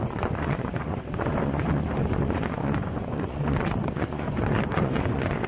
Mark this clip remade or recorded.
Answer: remade